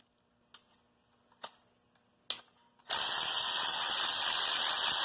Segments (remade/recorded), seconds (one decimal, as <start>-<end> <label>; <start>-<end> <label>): 0.0-5.0 recorded